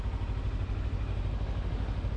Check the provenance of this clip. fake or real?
real